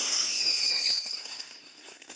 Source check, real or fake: fake